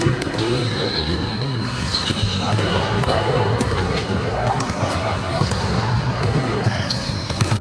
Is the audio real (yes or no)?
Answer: no